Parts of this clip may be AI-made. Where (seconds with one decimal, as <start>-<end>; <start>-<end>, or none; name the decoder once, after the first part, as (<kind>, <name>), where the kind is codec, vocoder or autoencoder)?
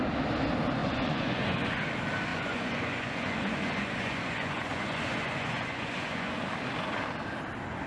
0.8-1.7 (vocoder, Vocos); 2.3-6.4